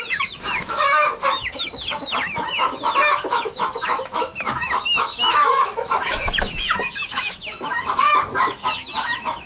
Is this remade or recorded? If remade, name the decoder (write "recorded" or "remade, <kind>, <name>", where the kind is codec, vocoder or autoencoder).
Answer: remade, autoencoder, DAC-VAE